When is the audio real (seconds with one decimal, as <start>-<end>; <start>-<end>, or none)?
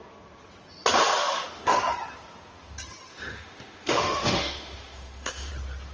0.0-1.2; 1.9-3.1; 5.5-5.9